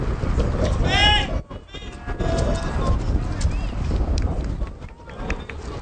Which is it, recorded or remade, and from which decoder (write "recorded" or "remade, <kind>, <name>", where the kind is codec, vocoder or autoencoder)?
recorded